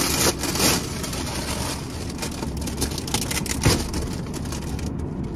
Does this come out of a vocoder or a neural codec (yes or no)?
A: no